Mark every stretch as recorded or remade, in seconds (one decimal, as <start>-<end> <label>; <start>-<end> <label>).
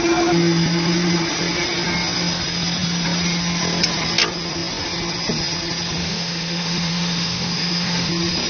0.0-6.0 recorded; 6.0-8.1 remade; 8.1-8.5 recorded